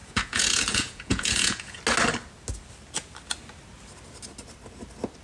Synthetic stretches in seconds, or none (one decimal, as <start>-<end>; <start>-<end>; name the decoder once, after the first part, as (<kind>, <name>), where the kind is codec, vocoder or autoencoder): 0.0-1.8 (vocoder, Vocos)